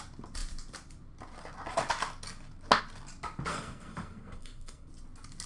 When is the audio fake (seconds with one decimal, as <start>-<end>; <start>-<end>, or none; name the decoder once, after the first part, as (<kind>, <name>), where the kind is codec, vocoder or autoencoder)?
3.5-4.9 (codec, SNAC)